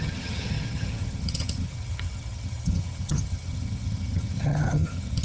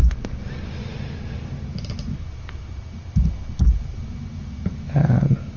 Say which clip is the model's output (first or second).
first